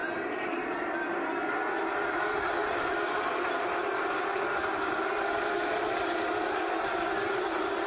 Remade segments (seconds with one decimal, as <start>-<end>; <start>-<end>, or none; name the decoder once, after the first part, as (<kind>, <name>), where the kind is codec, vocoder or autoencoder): 0.0-0.9 (vocoder, BigVGAN v2); 2.6-4.7